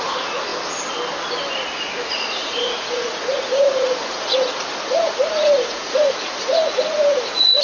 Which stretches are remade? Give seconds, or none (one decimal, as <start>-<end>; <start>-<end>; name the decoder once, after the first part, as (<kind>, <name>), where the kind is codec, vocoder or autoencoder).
0.0-0.5 (vocoder, Vocos); 2.1-7.6